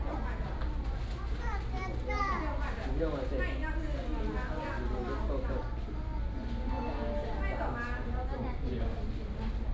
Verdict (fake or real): real